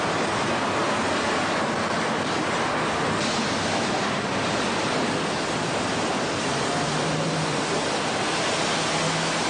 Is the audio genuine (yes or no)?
yes